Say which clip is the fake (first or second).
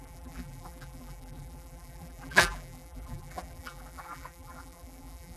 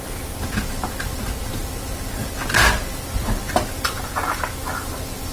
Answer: first